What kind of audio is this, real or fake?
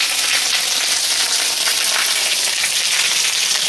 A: fake